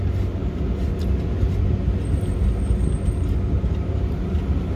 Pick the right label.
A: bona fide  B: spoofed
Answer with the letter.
A